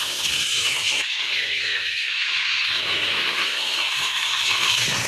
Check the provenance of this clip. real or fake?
fake